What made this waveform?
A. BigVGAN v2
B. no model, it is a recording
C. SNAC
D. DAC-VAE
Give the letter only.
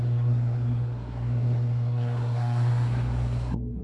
C